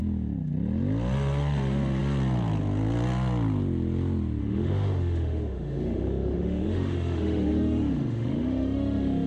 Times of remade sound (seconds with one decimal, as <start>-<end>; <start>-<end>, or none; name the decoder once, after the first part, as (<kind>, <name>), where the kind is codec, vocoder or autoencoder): 4.4-9.3 (autoencoder, DAC-VAE)